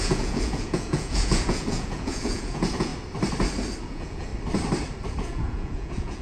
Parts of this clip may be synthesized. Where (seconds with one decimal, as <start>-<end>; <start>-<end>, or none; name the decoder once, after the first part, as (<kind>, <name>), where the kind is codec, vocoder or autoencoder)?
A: 0.0-2.9 (vocoder, Vocos); 3.8-4.3; 5.1-6.2